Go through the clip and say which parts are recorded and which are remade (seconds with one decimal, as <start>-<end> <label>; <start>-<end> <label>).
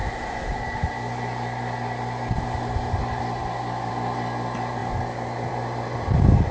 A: 0.0-6.5 recorded